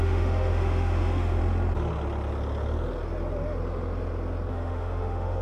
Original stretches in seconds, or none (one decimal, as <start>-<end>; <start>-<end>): 1.4-4.5